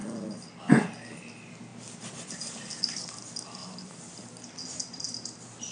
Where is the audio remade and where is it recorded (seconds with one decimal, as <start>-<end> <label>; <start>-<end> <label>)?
0.0-5.7 recorded